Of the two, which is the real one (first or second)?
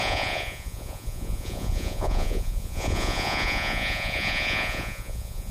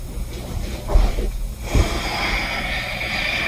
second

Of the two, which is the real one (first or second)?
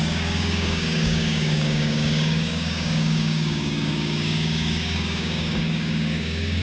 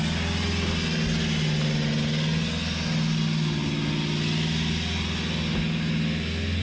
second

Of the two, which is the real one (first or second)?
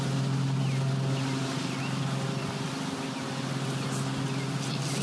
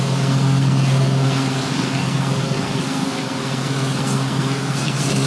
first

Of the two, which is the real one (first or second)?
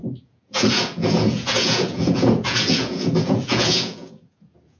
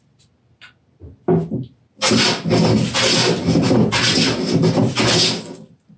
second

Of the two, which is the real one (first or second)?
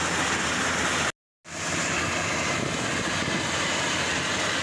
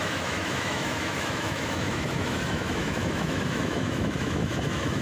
first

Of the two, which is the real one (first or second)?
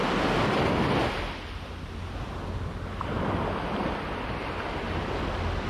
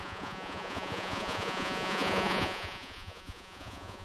first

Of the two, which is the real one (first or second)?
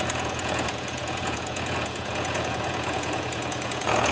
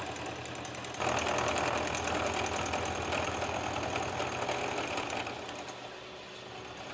second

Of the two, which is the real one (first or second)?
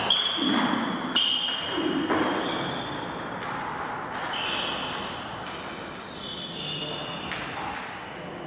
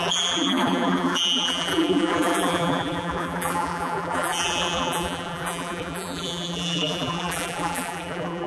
first